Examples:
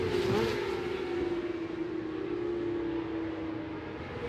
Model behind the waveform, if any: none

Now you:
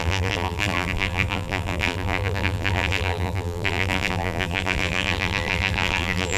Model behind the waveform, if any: vocoder, BigVGAN v2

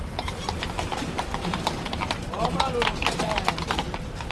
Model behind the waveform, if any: vocoder, BigVGAN v2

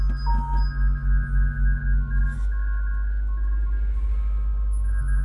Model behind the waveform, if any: none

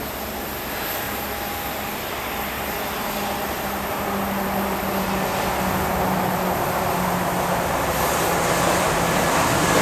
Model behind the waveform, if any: none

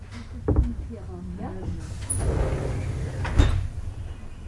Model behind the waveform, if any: none